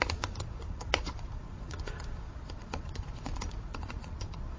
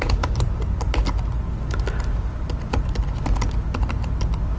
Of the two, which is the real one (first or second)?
second